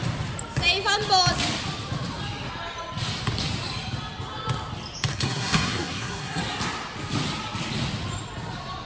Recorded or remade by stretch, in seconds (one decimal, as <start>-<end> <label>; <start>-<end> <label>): 0.0-5.1 recorded; 5.1-6.4 remade; 6.4-8.9 recorded